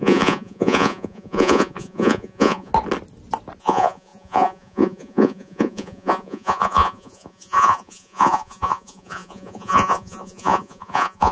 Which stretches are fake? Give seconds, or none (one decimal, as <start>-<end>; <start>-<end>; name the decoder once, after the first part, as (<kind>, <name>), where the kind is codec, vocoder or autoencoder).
0.0-2.7 (vocoder, Vocos); 3.6-11.3